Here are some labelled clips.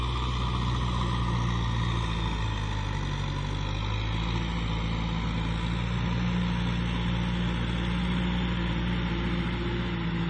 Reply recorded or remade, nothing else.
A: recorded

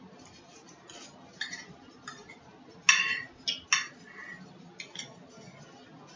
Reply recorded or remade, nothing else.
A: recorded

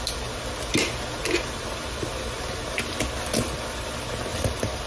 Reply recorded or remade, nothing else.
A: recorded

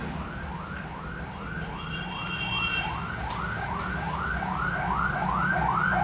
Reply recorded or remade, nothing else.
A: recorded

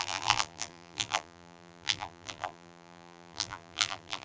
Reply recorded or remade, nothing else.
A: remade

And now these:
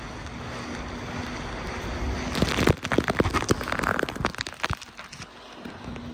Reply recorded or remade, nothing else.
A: recorded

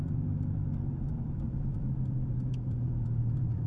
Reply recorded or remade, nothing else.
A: remade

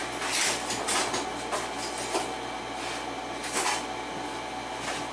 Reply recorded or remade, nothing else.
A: recorded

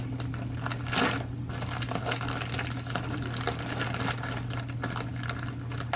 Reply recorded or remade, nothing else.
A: recorded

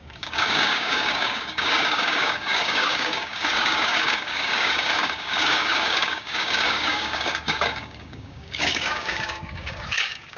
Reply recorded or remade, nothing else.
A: remade